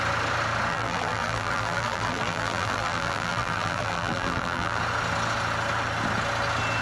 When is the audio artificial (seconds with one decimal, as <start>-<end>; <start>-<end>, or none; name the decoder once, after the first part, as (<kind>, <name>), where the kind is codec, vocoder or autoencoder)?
0.7-4.8 (vocoder, BigVGAN v2)